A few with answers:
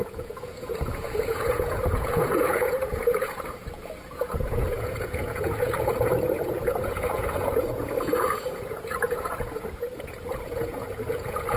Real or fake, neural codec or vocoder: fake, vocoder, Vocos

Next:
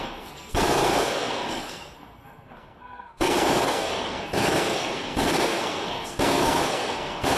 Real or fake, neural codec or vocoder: fake, codec, SNAC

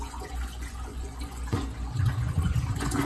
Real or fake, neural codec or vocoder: fake, vocoder, Vocos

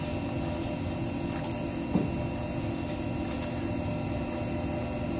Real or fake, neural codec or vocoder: real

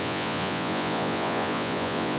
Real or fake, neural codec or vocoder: fake, vocoder, Vocos